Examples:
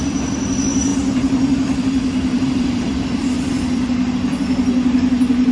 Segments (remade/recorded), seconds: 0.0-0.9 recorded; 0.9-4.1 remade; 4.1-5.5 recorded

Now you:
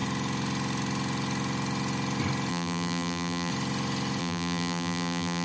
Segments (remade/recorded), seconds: 0.0-2.5 recorded; 2.5-3.5 remade; 3.5-4.2 recorded; 4.2-5.4 remade

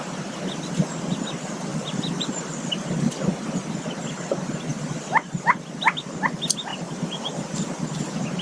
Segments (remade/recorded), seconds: 0.0-1.7 recorded; 1.7-3.7 remade; 3.7-6.7 recorded; 6.7-8.0 remade; 8.0-8.4 recorded

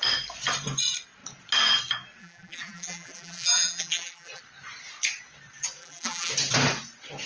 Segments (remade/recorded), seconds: 0.0-2.2 recorded; 2.2-4.4 remade; 4.4-5.8 recorded; 5.8-6.3 remade; 6.3-7.3 recorded

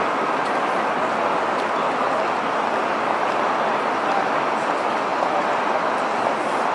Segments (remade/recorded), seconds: 0.0-6.7 recorded